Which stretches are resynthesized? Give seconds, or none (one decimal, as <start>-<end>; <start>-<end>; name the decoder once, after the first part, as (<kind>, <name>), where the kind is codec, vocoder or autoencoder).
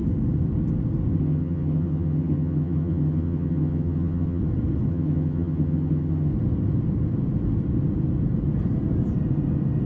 1.2-4.4 (vocoder, HiFi-GAN); 4.9-6.3